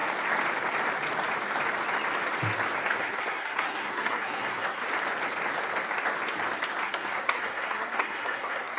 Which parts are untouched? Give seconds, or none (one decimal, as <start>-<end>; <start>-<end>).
0.0-2.9; 4.8-6.8